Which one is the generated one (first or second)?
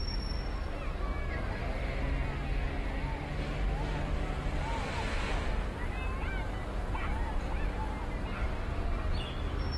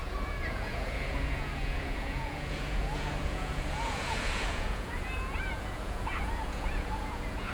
second